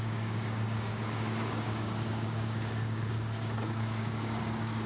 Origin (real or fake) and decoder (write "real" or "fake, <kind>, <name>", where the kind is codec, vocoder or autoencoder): fake, codec, DAC